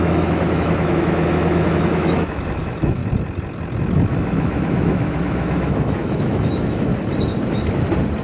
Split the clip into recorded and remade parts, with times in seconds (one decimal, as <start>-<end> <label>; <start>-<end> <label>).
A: 0.0-3.0 remade; 3.0-4.1 recorded; 4.1-6.9 remade; 6.9-8.2 recorded